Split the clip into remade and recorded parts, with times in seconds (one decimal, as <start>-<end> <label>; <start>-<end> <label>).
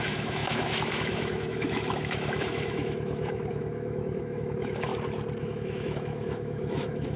0.0-4.9 remade; 4.9-5.4 recorded; 5.4-7.2 remade